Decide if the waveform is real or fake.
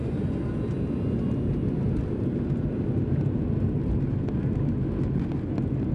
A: real